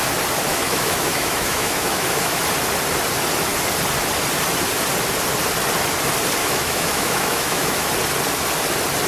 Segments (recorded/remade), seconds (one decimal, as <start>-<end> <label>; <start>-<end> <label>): 0.0-0.5 recorded; 0.5-2.4 remade; 2.4-6.4 recorded; 6.4-7.9 remade; 7.9-9.1 recorded